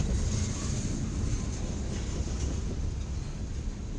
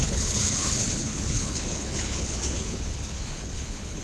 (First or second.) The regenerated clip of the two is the second